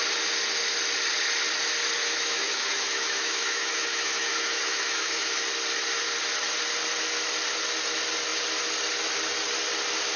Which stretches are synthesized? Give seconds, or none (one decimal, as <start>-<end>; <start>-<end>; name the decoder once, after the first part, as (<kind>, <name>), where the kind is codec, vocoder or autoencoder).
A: 2.0-5.4 (autoencoder, DAC-VAE)